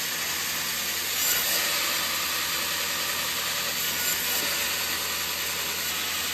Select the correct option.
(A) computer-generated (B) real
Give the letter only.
B